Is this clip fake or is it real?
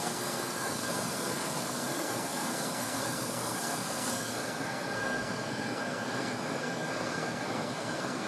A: fake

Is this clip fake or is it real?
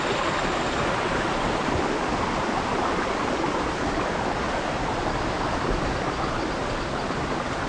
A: real